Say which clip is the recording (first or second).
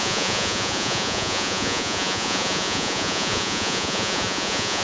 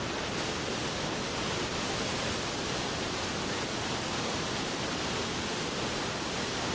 second